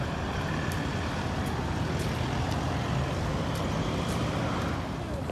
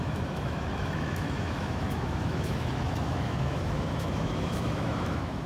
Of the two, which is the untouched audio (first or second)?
first